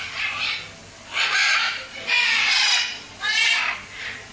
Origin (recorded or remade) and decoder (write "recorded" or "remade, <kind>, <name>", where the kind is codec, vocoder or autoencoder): recorded